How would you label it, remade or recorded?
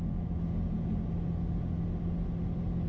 recorded